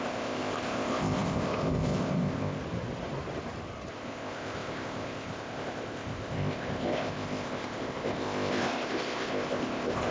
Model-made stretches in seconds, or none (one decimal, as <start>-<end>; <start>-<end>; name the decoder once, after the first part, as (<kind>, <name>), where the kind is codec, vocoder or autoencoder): 0.0-2.6 (codec, ZipCodec); 3.9-10.1